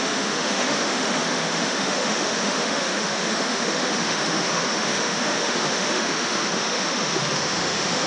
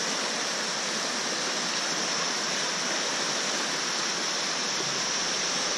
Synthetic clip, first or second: first